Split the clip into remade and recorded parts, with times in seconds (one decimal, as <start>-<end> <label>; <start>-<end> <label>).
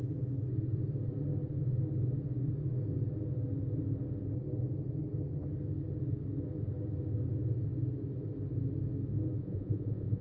0.0-9.4 recorded; 9.4-10.2 remade